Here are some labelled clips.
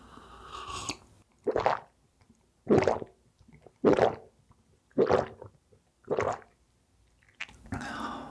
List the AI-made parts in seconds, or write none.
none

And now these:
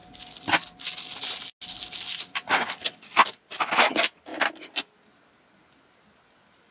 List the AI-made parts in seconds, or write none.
2.7-4.3

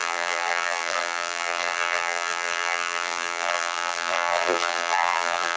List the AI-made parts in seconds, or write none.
0.0-5.6

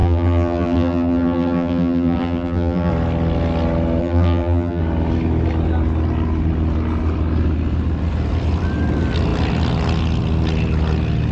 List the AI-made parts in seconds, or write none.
0.0-2.9; 4.0-4.8

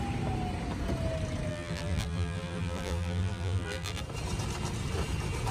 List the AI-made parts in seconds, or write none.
1.5-4.0

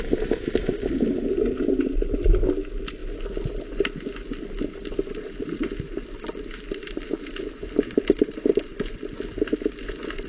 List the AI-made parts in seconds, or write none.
none

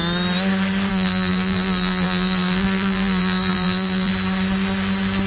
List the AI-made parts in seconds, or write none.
0.9-4.1